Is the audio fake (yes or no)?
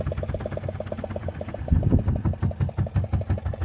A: no